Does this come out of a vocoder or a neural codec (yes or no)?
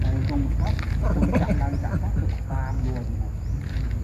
no